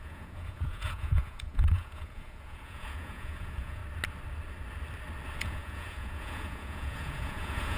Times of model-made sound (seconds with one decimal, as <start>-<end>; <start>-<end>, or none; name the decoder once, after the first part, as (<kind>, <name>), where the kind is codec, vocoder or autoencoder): 0.0-3.8 (vocoder, Vocos); 5.4-7.8

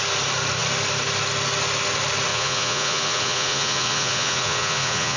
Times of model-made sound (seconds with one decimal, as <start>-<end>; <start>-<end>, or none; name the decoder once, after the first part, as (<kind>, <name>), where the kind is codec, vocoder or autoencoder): 2.3-5.2 (vocoder, Vocos)

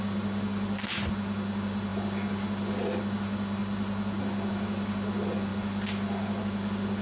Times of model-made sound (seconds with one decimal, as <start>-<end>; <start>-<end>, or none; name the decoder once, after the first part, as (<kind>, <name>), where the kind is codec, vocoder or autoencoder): none

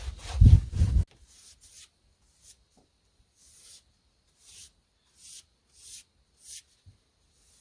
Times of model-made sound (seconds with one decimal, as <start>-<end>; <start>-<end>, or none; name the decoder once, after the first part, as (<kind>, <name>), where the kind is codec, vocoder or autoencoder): none

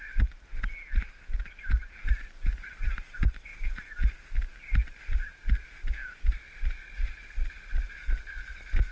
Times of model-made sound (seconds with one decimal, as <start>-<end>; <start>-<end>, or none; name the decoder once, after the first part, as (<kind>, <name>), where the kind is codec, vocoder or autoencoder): none